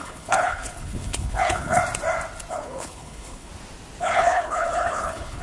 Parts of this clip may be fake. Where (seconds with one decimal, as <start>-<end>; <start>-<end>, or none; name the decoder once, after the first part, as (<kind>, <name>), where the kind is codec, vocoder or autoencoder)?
0.0-1.8 (codec, HILCodec); 2.5-3.5; 4.0-5.4